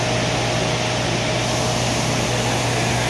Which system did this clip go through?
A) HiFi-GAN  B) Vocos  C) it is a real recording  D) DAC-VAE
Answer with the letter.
C